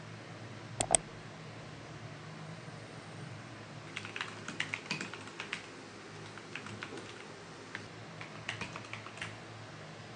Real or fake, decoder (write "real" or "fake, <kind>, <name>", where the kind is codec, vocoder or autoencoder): real